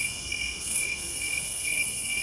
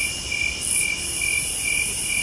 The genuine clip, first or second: second